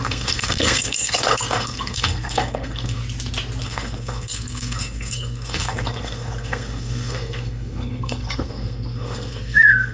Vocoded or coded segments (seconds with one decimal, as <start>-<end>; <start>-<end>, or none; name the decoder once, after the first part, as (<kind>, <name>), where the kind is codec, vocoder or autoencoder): 0.0-3.0 (codec, SNAC); 3.6-9.9